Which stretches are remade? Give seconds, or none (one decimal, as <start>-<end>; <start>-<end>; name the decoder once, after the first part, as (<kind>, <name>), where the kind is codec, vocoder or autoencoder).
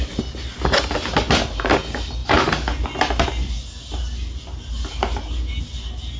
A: none